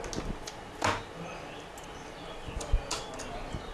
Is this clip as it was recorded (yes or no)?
yes